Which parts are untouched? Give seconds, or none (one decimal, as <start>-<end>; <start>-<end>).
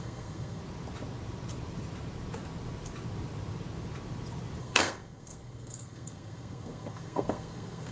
0.6-4.6